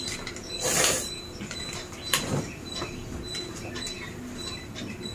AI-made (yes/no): yes